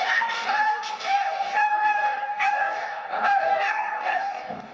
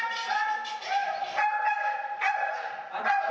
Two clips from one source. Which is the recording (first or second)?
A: second